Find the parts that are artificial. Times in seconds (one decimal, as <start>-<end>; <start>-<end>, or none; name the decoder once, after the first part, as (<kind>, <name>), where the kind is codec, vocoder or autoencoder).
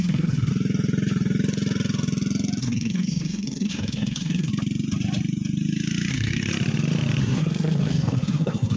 0.0-0.5 (codec, SNAC); 2.6-4.5; 6.1-6.5; 7.2-8.8